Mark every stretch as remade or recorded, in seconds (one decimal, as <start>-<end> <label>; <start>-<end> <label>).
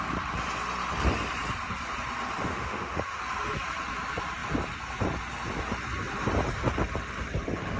0.0-2.5 recorded; 2.5-3.2 remade; 3.2-7.8 recorded